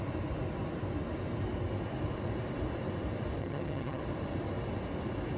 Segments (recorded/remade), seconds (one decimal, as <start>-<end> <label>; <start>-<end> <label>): 0.0-3.4 recorded; 3.4-4.0 remade; 4.0-5.4 recorded